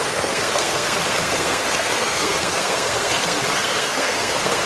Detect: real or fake fake